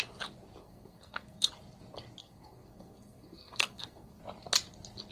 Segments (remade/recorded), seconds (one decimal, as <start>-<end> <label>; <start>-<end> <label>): 0.0-0.6 recorded; 0.6-1.5 remade; 1.5-2.2 recorded; 2.2-4.2 remade; 4.2-5.1 recorded